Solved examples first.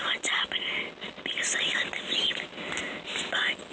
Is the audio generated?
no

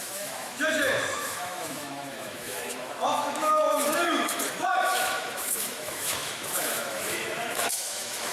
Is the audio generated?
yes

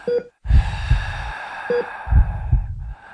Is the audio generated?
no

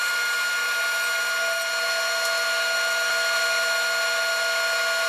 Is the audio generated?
no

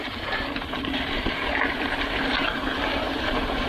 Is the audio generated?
yes